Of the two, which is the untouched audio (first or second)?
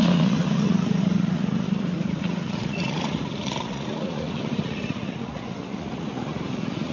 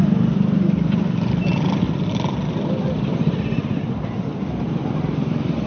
second